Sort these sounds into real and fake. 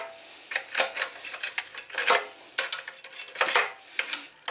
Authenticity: real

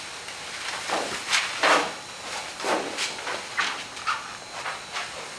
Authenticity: real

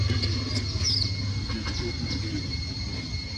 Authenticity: real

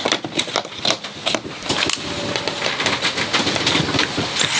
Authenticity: real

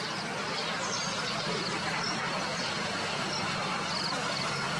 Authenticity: real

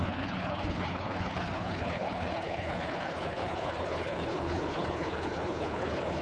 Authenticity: fake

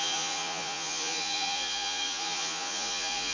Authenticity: fake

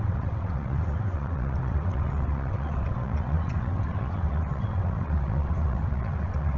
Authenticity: fake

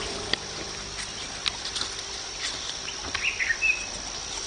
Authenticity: real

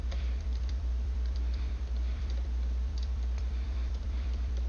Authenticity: fake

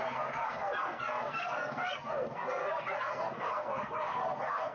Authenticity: fake